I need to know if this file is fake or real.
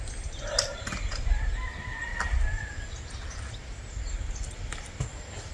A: real